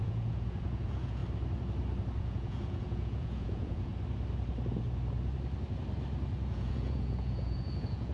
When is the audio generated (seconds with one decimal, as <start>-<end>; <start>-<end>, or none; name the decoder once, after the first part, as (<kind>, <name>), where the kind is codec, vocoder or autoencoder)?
0.0-1.2 (vocoder, Vocos); 2.2-3.9; 6.5-8.1